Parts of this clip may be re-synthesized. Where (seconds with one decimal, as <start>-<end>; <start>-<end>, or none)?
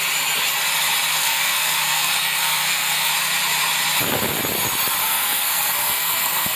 1.1-3.1; 5.0-6.6